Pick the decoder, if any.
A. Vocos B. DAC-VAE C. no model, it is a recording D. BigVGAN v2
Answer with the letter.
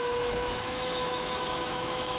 B